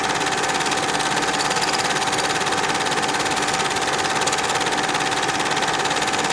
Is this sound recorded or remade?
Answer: recorded